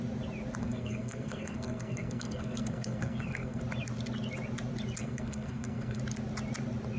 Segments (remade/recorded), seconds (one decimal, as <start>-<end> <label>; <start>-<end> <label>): 0.0-0.6 recorded; 0.6-3.6 remade; 3.6-5.0 recorded; 5.0-6.0 remade; 6.0-7.0 recorded